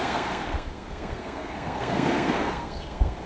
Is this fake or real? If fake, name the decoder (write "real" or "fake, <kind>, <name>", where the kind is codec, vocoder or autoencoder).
fake, codec, SNAC